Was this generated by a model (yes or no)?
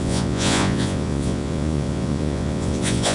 yes